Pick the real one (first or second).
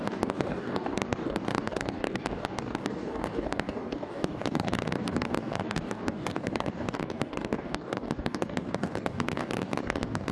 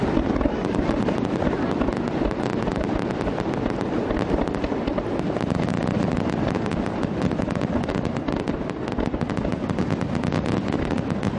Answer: second